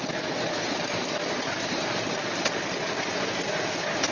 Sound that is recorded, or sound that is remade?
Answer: recorded